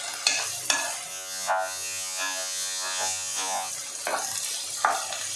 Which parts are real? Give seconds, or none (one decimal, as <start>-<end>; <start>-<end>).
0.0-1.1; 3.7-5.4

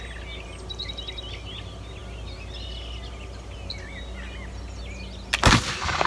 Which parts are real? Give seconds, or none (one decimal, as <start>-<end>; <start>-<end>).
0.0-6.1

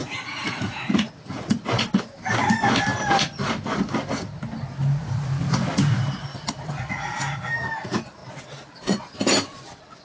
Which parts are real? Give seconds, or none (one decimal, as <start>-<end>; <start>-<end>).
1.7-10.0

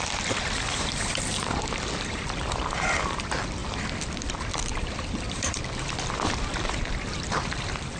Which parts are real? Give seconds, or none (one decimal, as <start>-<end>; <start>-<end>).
none

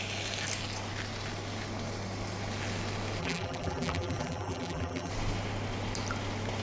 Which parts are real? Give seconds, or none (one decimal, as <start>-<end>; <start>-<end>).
0.0-3.2; 5.1-6.6